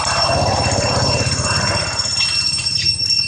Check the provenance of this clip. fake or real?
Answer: real